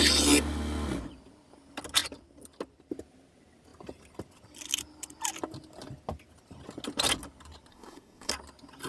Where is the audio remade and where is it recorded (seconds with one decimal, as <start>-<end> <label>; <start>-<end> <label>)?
0.0-7.7 recorded; 7.7-8.3 remade; 8.3-8.9 recorded